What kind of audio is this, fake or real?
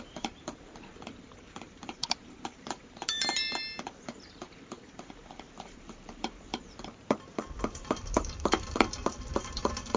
fake